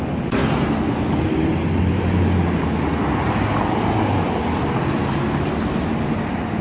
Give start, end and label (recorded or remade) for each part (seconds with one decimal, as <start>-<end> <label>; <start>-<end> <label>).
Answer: 0.0-6.6 recorded